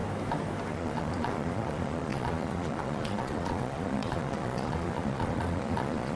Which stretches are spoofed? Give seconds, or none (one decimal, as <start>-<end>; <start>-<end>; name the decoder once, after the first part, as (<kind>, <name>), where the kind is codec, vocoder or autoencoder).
0.7-6.2 (vocoder, Vocos)